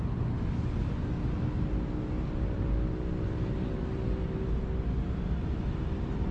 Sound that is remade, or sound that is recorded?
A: recorded